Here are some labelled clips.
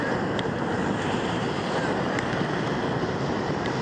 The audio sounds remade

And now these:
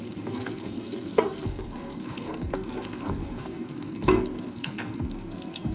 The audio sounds remade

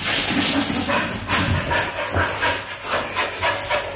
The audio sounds recorded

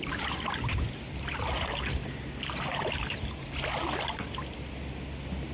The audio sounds recorded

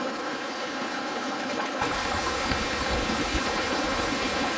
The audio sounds remade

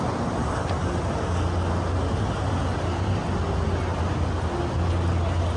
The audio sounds recorded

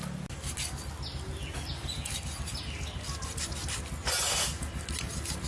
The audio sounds recorded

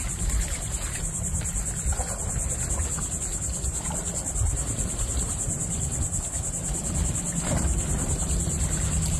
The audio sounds recorded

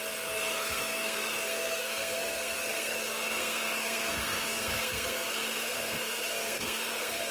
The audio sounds remade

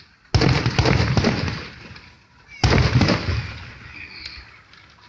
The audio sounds recorded